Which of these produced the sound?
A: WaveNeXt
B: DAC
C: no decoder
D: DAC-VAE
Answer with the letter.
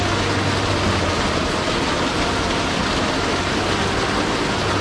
C